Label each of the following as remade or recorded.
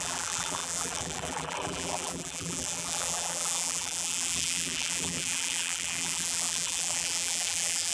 remade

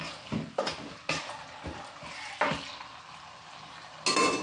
recorded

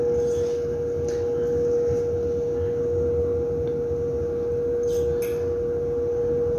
recorded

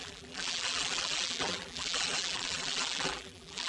remade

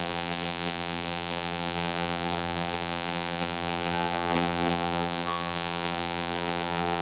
remade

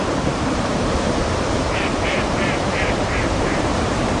remade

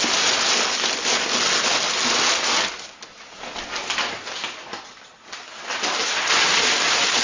recorded